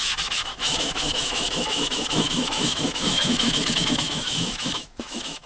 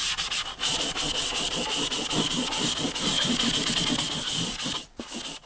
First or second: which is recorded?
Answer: second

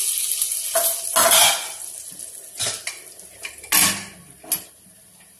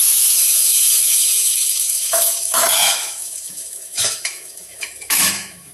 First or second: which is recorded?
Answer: first